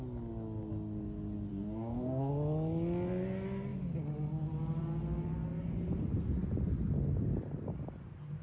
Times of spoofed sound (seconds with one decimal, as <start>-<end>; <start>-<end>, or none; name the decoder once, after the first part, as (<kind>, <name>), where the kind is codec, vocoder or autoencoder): 1.5-2.3 (codec, DAC)